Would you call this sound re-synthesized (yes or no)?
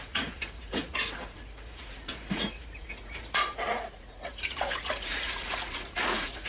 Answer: yes